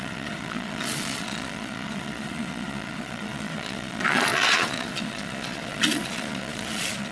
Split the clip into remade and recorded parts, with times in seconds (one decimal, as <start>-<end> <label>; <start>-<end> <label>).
0.0-7.1 remade